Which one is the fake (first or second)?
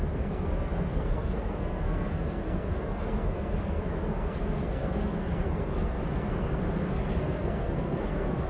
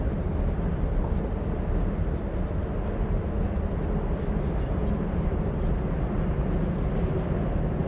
first